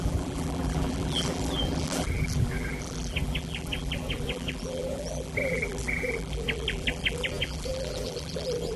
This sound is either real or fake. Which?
fake